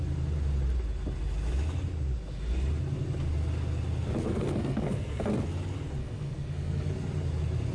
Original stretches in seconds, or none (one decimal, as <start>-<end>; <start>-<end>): 0.0-4.2; 5.3-6.0; 6.9-7.7